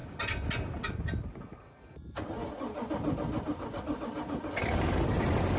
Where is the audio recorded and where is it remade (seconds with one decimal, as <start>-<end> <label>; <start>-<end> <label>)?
0.0-5.6 recorded